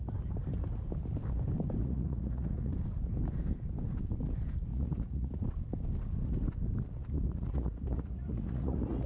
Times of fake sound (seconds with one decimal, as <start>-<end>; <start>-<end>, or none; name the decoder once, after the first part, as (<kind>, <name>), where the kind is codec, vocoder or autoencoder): 1.8-2.7 (vocoder, Vocos); 4.7-5.3; 7.0-9.1